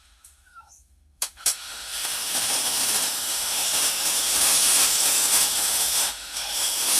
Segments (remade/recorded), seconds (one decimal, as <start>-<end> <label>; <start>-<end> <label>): 0.0-7.0 remade